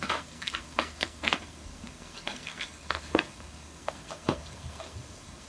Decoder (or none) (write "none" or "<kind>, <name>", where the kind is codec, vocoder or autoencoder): codec, SNAC